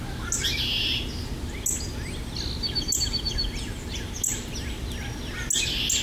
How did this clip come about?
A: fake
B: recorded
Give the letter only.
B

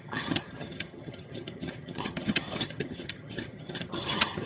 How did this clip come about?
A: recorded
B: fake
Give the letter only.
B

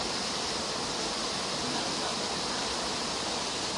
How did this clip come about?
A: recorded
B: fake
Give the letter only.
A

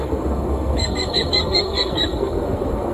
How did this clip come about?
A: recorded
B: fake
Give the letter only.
B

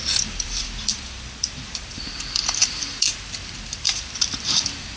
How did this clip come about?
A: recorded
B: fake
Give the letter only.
B